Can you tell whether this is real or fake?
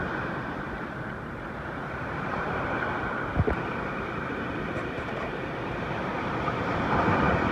fake